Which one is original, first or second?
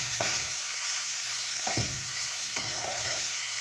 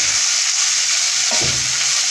second